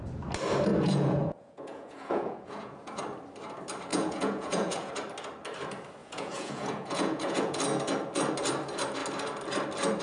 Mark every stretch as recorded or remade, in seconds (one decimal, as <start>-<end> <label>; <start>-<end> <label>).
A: 0.0-0.7 recorded; 0.7-3.0 remade; 3.0-3.9 recorded; 3.9-4.9 remade; 4.9-6.0 recorded; 6.0-7.6 remade; 7.6-10.0 recorded